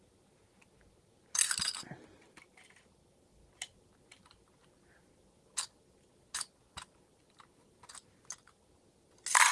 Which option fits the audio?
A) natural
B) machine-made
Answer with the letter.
A